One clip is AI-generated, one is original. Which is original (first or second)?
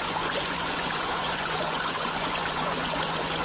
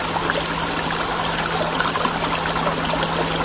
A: second